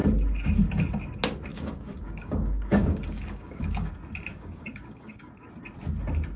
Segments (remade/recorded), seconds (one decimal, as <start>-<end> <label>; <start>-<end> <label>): 0.0-1.5 recorded; 1.5-3.9 remade; 3.9-4.3 recorded; 4.3-5.3 remade; 5.3-6.4 recorded